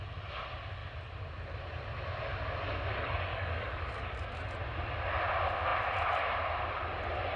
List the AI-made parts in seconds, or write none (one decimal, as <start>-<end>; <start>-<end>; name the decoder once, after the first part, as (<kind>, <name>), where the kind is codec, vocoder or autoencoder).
3.3-4.5 (codec, DAC)